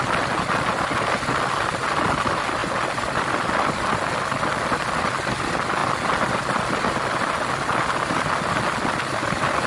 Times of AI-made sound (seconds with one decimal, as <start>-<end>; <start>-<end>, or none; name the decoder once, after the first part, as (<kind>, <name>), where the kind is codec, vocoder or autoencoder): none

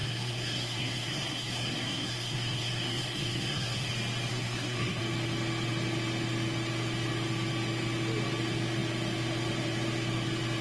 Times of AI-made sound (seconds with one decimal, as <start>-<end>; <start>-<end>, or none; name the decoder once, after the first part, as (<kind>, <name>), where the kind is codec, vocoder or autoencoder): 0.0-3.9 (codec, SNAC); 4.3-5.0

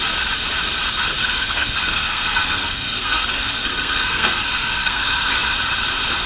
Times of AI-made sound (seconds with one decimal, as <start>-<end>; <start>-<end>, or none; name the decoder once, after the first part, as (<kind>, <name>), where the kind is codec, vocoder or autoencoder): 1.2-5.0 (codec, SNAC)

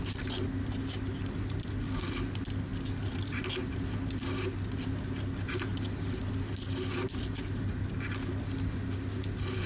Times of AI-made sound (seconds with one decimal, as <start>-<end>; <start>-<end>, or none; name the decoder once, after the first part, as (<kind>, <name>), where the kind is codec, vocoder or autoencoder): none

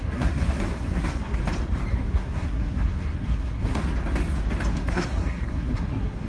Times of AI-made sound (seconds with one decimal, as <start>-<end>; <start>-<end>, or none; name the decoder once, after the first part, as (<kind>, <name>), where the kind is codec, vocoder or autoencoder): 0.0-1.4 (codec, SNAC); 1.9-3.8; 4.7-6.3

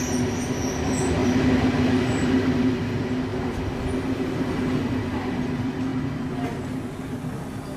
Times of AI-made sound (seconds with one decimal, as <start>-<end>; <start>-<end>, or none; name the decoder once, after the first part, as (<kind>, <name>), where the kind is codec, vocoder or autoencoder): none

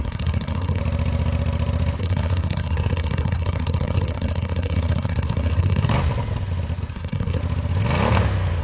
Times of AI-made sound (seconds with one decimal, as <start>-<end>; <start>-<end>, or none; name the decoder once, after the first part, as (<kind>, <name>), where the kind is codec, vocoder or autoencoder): 0.0-0.8 (codec, SNAC); 2.0-5.9; 6.9-7.4

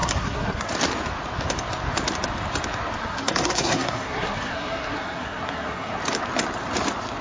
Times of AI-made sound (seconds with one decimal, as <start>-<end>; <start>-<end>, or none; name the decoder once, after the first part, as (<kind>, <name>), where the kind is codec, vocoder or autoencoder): 0.0-0.7 (codec, SNAC); 3.0-6.0